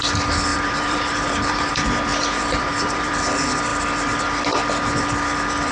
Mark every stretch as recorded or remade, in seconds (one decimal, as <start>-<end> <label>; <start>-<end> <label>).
0.0-0.5 recorded; 0.5-1.7 remade; 1.7-2.1 recorded; 2.1-3.1 remade; 3.1-5.7 recorded